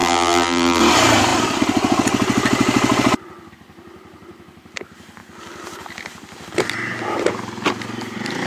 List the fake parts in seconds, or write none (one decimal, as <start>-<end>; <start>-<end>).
0.0-0.8